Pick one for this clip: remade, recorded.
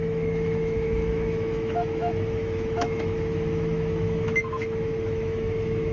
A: remade